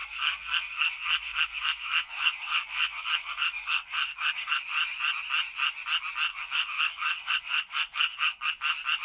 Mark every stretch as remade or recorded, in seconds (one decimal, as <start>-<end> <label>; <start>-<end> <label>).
0.0-4.6 remade; 4.6-6.3 recorded; 6.3-8.5 remade; 8.5-9.0 recorded